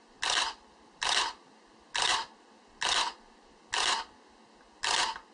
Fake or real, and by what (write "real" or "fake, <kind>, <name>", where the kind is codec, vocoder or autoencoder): real